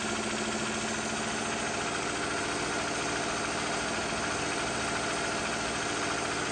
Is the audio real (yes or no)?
yes